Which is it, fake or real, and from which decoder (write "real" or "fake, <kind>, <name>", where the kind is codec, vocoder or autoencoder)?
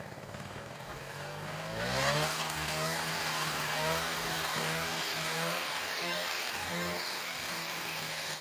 fake, codec, DAC